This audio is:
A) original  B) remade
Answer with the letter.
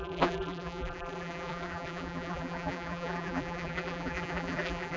B